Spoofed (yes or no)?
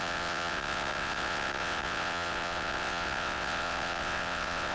yes